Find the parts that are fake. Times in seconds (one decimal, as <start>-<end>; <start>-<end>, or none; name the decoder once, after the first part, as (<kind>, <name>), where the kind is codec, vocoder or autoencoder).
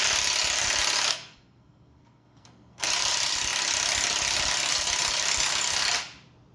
1.1-2.9 (codec, SNAC)